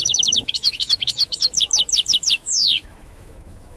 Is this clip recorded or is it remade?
remade